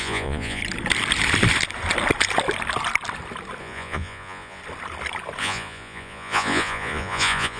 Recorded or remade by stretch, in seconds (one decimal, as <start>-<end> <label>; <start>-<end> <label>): 0.0-0.6 remade; 0.6-3.6 recorded; 3.6-4.6 remade; 4.6-5.4 recorded; 5.4-7.6 remade